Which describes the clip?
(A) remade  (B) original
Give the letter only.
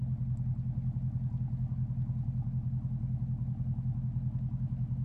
B